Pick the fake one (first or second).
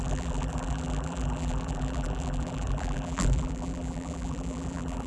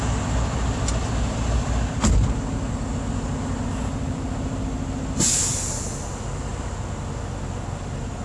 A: first